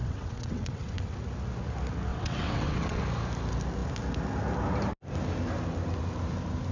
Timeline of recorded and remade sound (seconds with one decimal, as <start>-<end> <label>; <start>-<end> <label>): 0.0-1.2 remade; 1.2-2.1 recorded; 2.1-3.0 remade; 3.0-6.7 recorded